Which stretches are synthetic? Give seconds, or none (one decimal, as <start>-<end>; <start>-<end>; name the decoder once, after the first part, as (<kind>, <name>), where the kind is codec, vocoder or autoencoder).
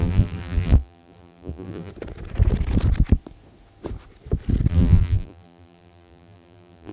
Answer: 0.0-1.9 (vocoder, BigVGAN v2); 4.7-6.9